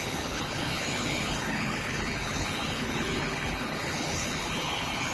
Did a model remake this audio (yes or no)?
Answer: yes